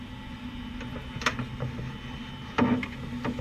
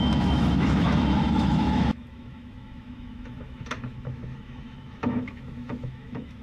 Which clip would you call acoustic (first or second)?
first